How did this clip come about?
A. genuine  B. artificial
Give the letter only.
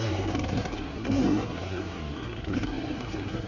B